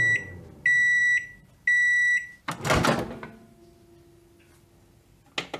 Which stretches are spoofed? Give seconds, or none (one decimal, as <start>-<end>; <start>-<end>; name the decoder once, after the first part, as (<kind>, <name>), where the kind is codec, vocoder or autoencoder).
none